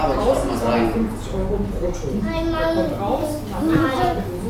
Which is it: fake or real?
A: real